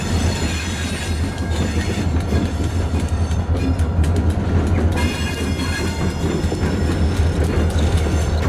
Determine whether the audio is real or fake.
real